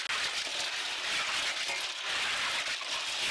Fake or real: real